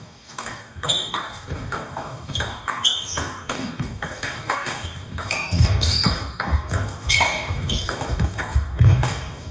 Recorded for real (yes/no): no